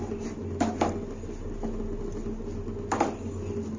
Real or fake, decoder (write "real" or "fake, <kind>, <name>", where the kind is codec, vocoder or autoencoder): real